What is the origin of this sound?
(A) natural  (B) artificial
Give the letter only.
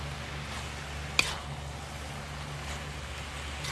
A